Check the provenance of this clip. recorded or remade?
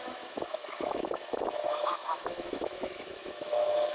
remade